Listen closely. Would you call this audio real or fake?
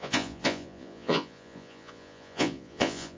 fake